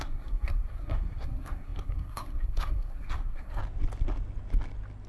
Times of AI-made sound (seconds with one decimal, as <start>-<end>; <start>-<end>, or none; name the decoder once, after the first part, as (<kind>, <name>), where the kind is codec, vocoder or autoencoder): 0.0-3.6 (codec, SNAC)